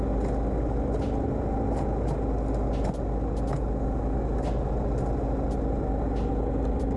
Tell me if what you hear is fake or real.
real